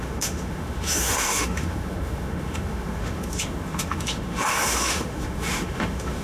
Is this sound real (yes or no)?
no